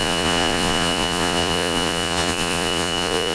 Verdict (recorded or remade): remade